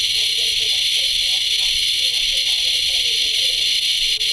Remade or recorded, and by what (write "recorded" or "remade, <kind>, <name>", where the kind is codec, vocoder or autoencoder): remade, vocoder, WaveNeXt